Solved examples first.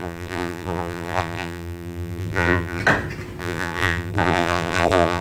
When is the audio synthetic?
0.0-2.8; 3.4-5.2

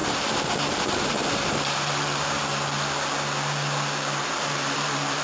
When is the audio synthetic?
0.0-2.5; 4.2-5.2